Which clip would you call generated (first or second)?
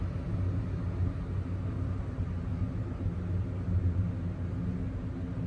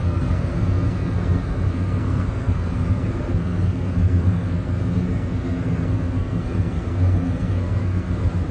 second